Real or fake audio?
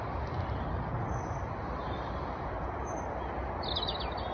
real